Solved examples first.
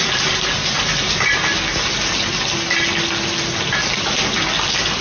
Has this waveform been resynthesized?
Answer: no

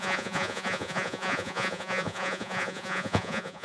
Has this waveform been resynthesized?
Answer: yes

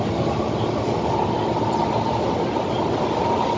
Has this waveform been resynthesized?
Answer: no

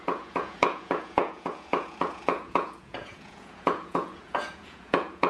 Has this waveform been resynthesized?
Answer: yes